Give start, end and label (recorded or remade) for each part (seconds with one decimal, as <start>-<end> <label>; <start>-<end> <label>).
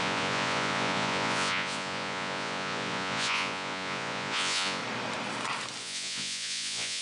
0.0-4.8 remade; 4.8-5.8 recorded; 5.8-7.0 remade